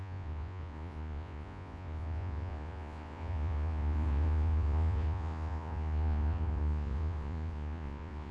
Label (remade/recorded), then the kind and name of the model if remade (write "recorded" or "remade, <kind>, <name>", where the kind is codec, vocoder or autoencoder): remade, vocoder, Vocos